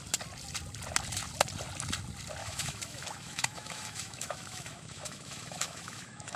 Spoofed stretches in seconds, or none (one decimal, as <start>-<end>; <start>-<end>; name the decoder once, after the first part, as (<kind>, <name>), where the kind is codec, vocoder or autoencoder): 2.4-6.4 (autoencoder, DAC-VAE)